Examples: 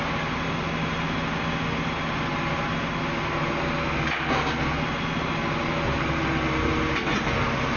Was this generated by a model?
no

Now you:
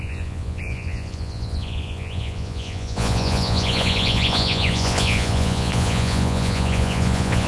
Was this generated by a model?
yes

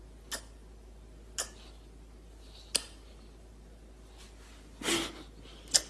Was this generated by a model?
no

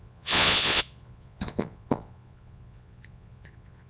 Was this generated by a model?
yes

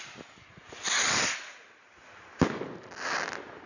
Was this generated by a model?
no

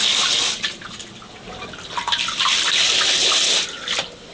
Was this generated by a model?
no